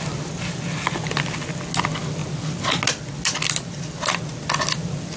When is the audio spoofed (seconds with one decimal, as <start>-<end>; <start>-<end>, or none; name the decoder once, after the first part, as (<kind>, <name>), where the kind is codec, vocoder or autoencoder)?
none